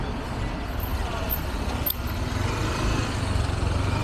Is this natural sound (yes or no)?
yes